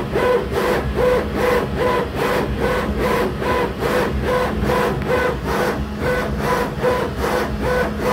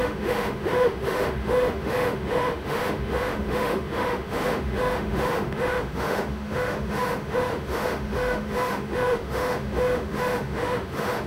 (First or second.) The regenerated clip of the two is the second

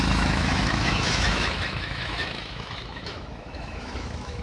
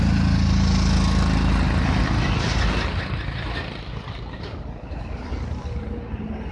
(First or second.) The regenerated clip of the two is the first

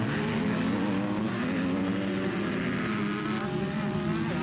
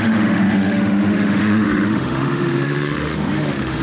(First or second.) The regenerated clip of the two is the second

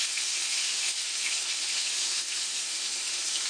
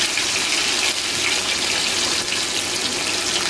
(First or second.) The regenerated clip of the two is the first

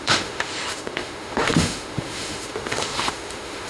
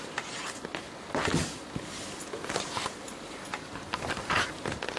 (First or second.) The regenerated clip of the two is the first